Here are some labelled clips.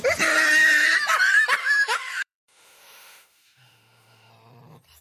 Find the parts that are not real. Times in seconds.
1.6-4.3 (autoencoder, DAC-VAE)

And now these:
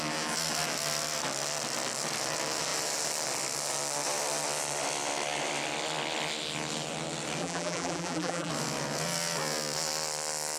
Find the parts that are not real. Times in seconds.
7.4-8.5 (vocoder, BigVGAN v2)